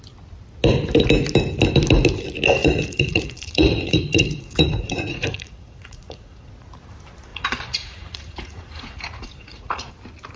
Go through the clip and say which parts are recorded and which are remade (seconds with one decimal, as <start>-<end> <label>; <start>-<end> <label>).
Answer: 0.0-2.6 recorded; 2.6-6.5 remade; 6.5-7.3 recorded; 7.3-9.9 remade; 9.9-10.4 recorded